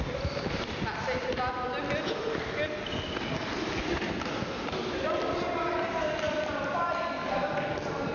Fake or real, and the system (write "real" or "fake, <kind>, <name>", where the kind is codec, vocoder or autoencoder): real